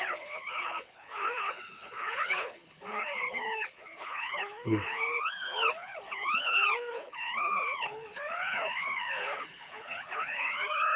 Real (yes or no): no